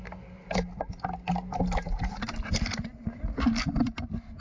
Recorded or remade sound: recorded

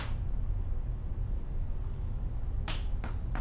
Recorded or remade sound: remade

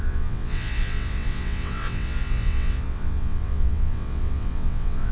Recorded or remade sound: remade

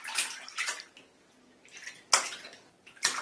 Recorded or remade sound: recorded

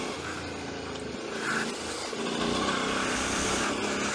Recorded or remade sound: recorded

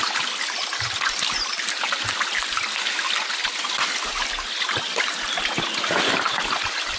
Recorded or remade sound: recorded